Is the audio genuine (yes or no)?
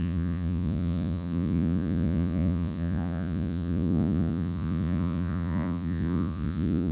no